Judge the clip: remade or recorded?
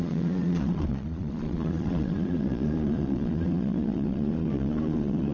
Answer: remade